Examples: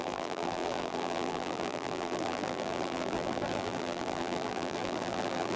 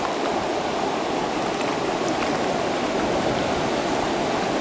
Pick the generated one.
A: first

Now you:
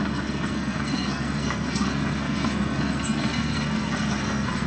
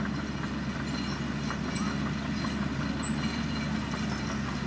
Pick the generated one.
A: first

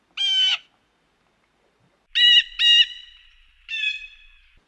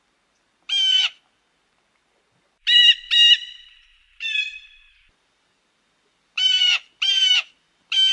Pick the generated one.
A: second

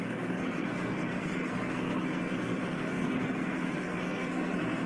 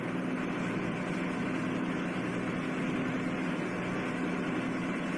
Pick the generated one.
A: first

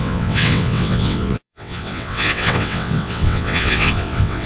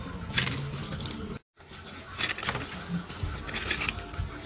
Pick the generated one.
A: first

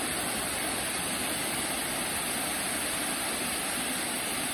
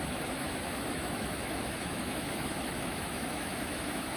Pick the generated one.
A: second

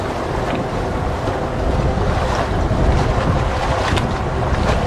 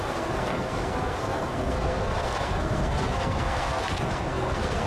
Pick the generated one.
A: second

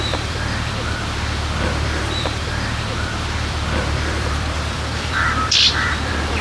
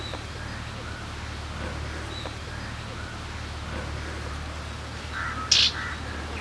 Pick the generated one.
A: first